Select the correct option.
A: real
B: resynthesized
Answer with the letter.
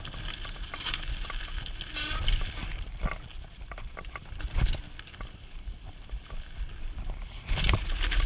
A